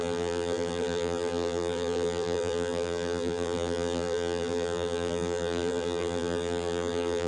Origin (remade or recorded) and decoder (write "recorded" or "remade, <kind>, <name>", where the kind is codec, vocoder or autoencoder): remade, vocoder, BigVGAN v2